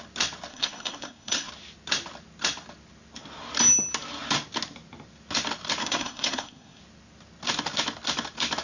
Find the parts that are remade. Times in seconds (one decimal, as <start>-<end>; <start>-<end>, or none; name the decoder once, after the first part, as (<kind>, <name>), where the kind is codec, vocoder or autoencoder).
0.5-1.5 (codec, SNAC); 5.8-6.8